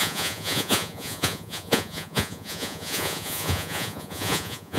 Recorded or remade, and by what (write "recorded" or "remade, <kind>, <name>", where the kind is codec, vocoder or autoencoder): remade, vocoder, Vocos